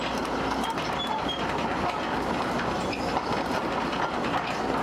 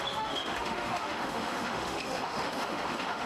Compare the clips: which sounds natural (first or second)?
first